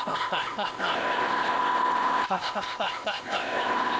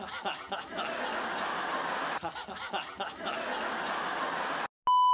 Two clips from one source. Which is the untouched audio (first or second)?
second